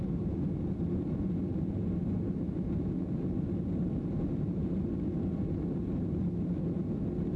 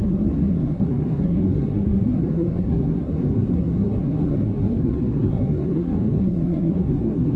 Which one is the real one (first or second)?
first